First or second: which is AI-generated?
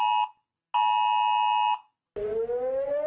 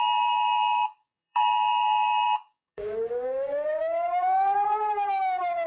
second